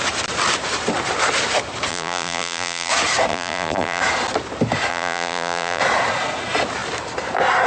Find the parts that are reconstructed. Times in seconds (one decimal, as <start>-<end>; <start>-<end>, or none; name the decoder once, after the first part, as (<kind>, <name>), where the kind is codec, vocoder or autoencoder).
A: 1.9-2.9 (vocoder, BigVGAN v2); 3.3-4.0; 4.9-5.8